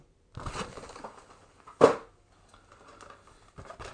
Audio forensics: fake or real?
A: real